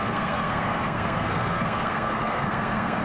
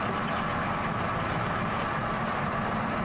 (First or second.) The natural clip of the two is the second